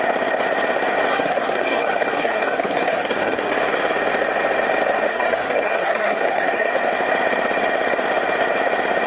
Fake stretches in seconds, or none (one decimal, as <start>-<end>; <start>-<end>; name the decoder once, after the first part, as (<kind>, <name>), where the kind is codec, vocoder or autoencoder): 1.1-3.5 (codec, SNAC); 5.1-6.7